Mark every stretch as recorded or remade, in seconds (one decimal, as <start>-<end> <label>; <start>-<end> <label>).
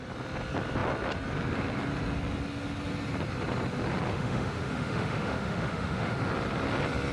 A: 0.0-4.1 recorded; 4.1-6.3 remade; 6.3-7.1 recorded